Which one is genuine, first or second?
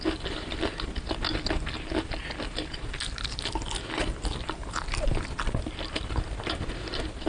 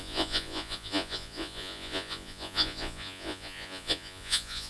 first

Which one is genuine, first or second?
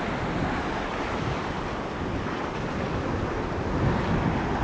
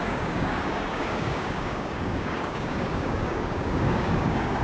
first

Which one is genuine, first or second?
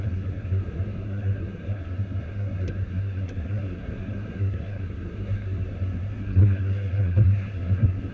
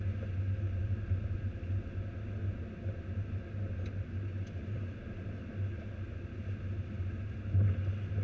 second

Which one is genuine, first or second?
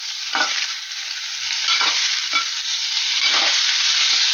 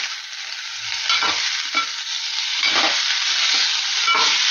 second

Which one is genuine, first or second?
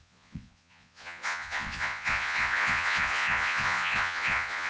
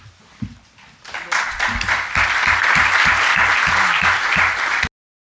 second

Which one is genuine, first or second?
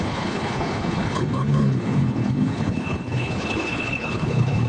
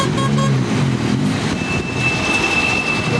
second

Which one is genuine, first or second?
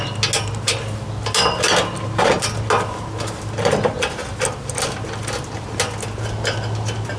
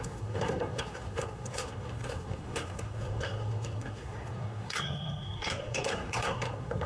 first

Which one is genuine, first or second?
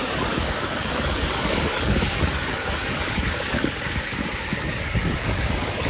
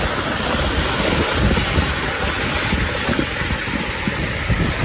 second